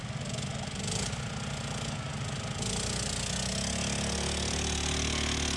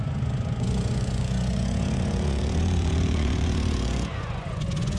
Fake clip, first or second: second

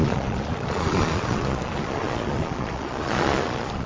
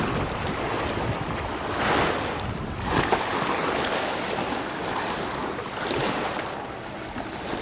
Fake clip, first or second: first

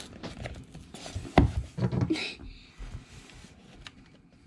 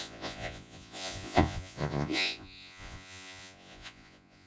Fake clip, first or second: second